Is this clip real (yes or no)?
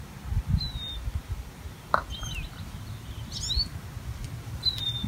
yes